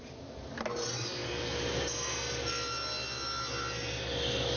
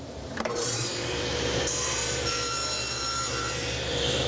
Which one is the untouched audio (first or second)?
first